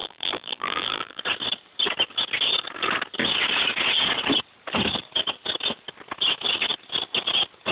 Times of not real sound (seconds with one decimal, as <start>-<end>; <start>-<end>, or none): 0.0-1.2